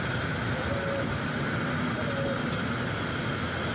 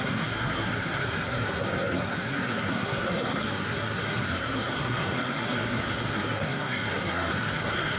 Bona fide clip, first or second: first